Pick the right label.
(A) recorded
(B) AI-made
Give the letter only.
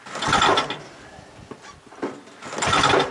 A